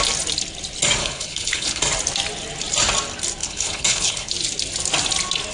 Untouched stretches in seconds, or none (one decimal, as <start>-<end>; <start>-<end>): 0.0-1.0; 1.8-3.4; 4.3-5.5